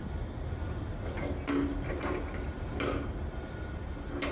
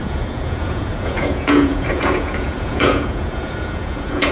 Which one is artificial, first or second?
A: second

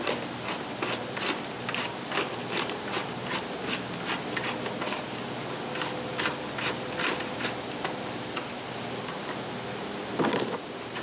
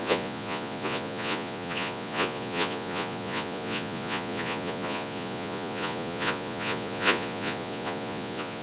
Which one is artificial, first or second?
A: second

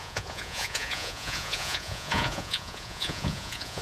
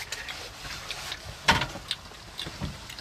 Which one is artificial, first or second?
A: first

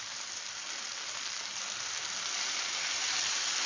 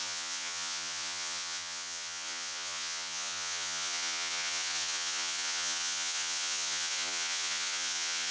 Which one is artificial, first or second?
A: second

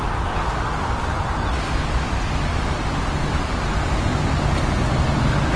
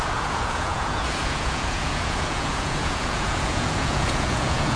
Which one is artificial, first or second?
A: second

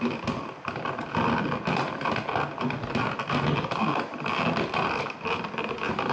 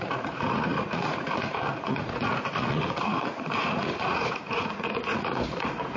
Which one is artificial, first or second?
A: second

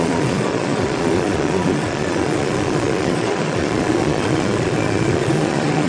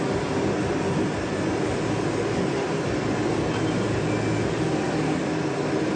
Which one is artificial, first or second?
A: first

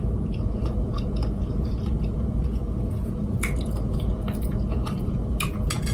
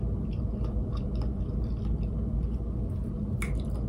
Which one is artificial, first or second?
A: first